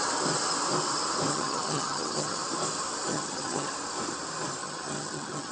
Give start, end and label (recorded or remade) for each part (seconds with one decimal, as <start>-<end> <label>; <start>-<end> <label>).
0.0-1.3 recorded; 1.3-2.4 remade; 2.4-3.1 recorded; 3.1-3.7 remade; 3.7-4.6 recorded; 4.6-5.5 remade